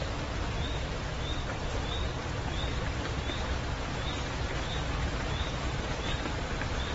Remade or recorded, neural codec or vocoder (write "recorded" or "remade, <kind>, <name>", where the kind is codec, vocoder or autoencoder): recorded